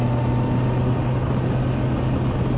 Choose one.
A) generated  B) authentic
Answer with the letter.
B